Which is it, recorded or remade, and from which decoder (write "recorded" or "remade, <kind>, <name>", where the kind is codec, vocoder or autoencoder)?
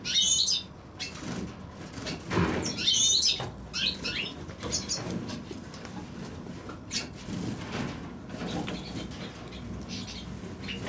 recorded